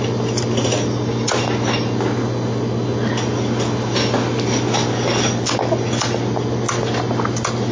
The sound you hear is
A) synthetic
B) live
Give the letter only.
B